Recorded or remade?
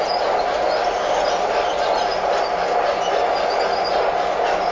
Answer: recorded